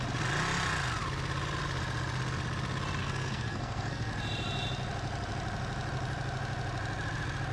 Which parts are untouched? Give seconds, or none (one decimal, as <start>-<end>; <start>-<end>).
0.0-3.0; 4.1-7.5